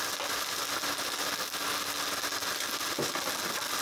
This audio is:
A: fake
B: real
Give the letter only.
B